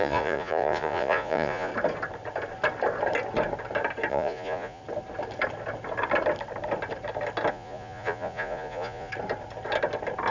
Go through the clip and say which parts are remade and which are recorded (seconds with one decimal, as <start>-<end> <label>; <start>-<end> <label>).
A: 0.0-1.7 remade; 1.7-4.1 recorded; 4.1-4.8 remade; 4.8-7.5 recorded; 7.5-9.1 remade; 9.1-10.3 recorded